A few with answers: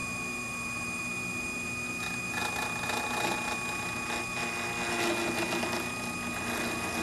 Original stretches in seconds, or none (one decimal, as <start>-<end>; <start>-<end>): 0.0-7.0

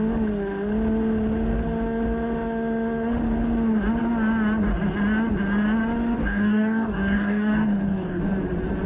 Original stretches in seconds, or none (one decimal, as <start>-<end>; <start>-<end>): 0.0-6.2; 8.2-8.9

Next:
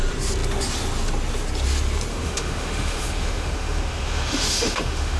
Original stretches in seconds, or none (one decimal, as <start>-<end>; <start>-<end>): 0.0-2.1

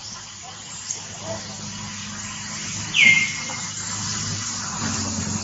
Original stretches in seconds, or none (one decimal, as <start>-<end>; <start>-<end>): 0.8-5.4